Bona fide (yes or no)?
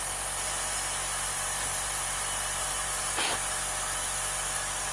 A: no